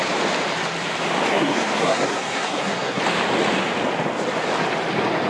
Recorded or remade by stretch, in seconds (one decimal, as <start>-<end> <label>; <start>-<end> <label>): 0.0-1.3 recorded; 1.3-3.0 remade; 3.0-5.3 recorded

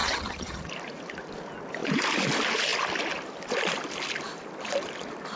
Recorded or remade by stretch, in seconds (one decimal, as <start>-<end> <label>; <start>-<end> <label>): 0.0-0.7 remade; 0.7-5.4 recorded

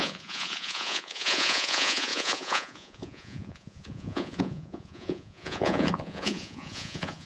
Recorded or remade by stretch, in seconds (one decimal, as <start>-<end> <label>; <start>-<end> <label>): 0.0-7.3 remade